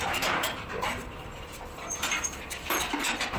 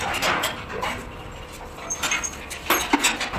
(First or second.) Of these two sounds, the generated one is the first